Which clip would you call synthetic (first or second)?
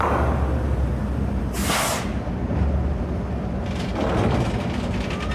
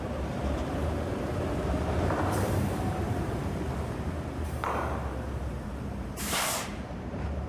second